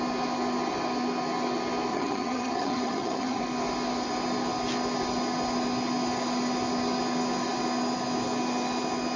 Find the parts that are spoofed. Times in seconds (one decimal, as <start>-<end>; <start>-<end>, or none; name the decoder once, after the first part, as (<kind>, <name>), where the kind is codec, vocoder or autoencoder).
1.9-3.4 (vocoder, HiFi-GAN)